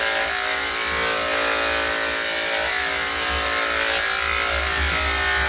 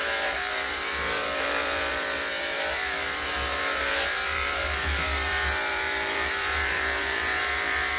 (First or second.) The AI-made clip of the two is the second